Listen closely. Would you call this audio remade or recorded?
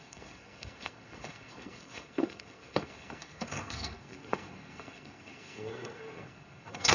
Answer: remade